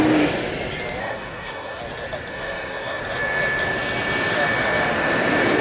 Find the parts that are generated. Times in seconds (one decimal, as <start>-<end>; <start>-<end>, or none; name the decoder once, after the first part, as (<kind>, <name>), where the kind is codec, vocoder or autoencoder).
1.0-1.8 (codec, SNAC); 2.3-3.0